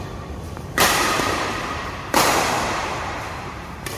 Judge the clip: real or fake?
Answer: fake